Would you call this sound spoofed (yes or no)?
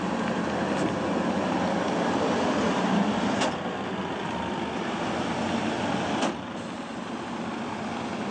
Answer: no